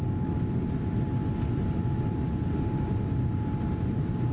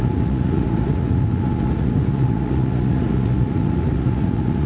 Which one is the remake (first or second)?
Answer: second